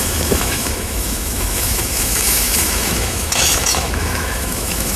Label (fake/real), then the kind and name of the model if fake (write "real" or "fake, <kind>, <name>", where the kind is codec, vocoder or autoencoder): fake, autoencoder, DAC-VAE